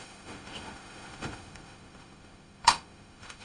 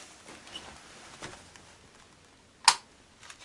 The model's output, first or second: first